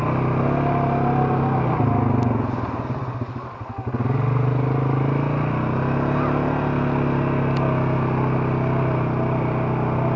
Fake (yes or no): no